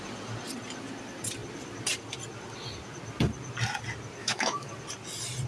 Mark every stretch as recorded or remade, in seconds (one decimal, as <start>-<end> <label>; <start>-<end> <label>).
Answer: 0.0-4.2 recorded; 4.2-4.7 remade; 4.7-5.5 recorded